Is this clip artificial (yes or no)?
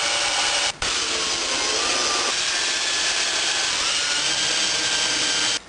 no